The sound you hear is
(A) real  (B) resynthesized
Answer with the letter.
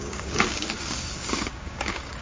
B